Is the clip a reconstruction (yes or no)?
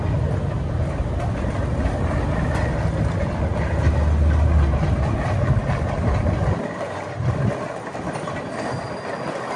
no